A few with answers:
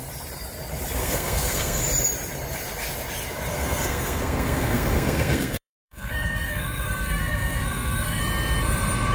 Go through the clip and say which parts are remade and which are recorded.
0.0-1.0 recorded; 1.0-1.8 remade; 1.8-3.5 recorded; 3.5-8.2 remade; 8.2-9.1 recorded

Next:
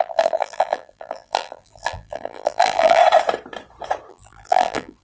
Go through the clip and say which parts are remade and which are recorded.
0.0-3.0 remade; 3.0-4.1 recorded; 4.1-5.0 remade

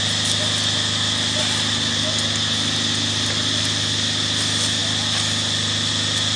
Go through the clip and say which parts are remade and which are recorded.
0.0-6.4 recorded

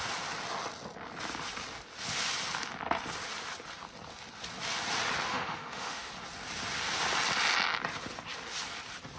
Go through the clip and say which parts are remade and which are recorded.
0.0-5.3 recorded; 5.3-6.1 remade; 6.1-9.2 recorded

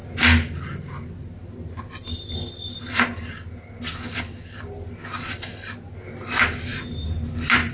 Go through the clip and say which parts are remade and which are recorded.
0.0-6.7 recorded; 6.7-7.3 remade; 7.3-7.7 recorded

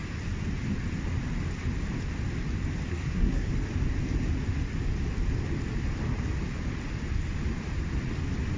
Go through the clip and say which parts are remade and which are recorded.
0.0-2.9 recorded; 2.9-3.5 remade; 3.5-8.6 recorded

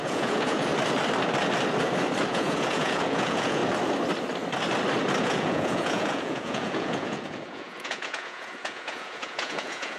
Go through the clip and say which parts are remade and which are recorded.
0.0-0.7 remade; 0.7-2.3 recorded; 2.3-3.6 remade; 3.6-5.2 recorded; 5.2-10.0 remade